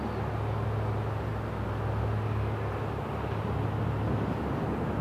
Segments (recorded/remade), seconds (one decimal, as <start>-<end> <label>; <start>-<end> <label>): 0.0-5.0 recorded